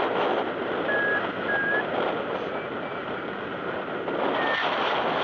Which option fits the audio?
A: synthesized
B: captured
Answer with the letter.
B